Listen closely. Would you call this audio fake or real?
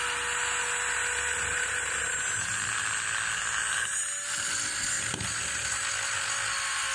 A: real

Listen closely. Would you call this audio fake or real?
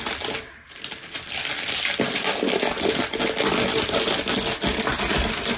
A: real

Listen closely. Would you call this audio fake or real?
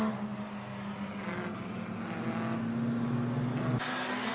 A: real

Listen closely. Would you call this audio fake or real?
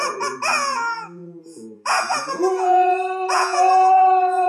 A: fake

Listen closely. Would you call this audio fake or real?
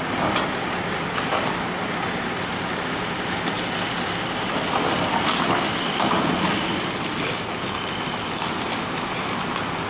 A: real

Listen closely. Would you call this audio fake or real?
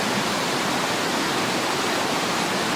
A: real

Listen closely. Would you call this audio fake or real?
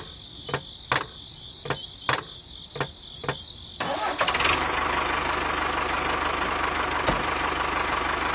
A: real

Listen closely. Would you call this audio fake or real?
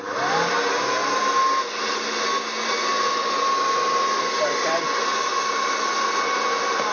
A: real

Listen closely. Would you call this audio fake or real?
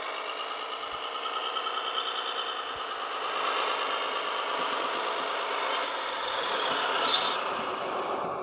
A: real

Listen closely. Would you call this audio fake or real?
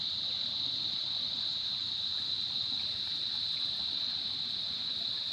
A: real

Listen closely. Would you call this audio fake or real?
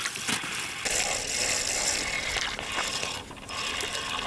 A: real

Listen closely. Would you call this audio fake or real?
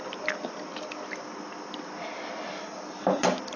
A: real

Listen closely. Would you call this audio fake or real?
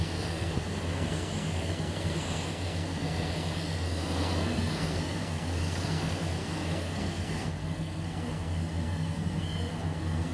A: fake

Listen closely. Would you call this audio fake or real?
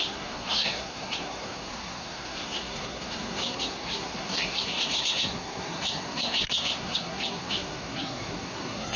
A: fake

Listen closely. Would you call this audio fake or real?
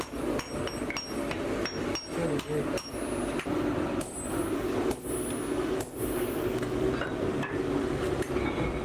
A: real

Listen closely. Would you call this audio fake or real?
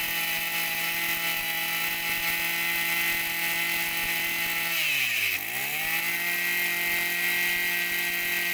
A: real